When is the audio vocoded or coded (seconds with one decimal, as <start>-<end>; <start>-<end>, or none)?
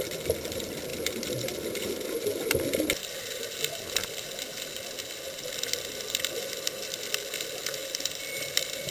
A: 0.0-0.9; 6.1-8.9